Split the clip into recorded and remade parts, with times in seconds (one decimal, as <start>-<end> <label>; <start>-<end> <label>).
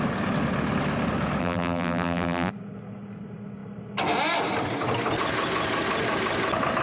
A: 0.0-1.4 recorded; 1.4-2.5 remade; 2.5-6.8 recorded